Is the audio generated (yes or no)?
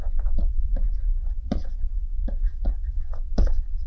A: yes